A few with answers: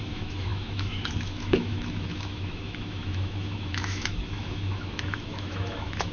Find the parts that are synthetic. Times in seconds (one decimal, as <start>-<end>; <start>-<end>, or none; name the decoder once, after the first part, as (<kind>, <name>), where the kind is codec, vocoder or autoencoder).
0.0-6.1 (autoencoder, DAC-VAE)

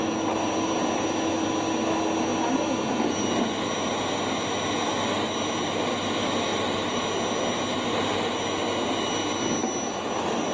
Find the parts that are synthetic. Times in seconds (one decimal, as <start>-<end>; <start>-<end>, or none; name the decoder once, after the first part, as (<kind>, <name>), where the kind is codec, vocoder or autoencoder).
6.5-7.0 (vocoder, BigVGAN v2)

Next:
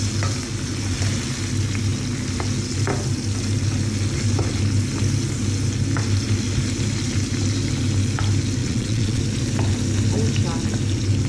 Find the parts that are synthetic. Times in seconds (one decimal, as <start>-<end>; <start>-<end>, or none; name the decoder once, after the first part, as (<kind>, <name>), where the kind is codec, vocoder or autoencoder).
8.6-9.2 (vocoder, Vocos)

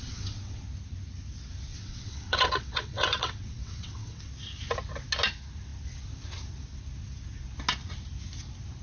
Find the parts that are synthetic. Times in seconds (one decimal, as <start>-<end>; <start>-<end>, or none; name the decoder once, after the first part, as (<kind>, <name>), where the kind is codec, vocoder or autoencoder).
0.0-0.6 (vocoder, WaveNeXt); 1.7-4.3

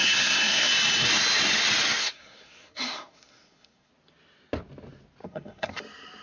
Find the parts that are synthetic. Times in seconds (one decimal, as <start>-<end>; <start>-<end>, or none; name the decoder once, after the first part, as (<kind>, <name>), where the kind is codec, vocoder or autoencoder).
0.0-0.7 (codec, SNAC); 2.0-3.9; 5.2-5.8

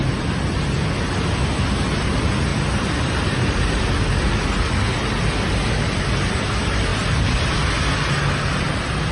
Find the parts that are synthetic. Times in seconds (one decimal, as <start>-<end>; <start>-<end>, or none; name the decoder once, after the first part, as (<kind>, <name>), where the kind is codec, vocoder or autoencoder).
none

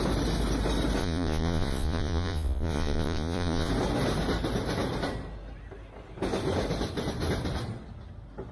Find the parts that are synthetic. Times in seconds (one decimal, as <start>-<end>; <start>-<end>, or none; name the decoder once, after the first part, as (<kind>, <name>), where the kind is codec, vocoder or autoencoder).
1.0-3.7 (vocoder, Vocos)